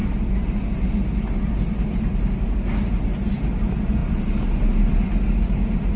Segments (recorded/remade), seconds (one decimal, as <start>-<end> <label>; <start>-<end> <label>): 0.0-6.0 recorded